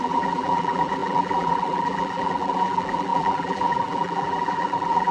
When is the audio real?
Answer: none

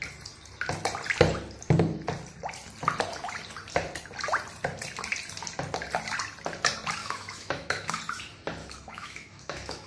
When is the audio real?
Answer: 0.0-7.0; 8.0-8.6

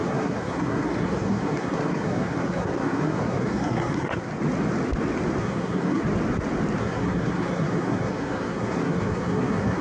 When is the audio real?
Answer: 4.3-5.4; 6.0-6.8

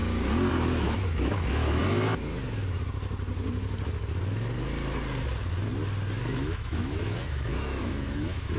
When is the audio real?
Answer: 0.0-0.5; 1.8-6.2

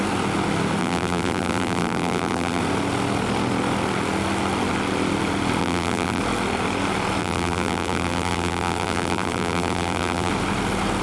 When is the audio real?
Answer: 0.0-0.8; 2.6-5.6; 6.2-7.2; 10.3-11.0

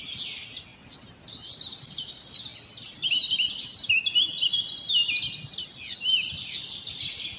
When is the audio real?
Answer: 0.0-7.4